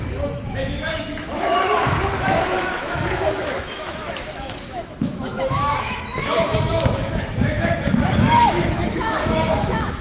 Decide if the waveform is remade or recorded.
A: remade